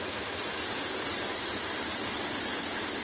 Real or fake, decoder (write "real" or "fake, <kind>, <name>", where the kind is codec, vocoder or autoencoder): real